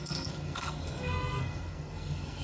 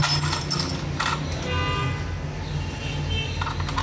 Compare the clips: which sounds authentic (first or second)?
second